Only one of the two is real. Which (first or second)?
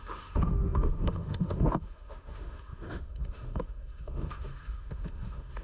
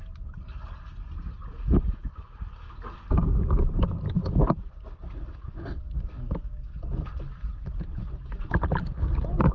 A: second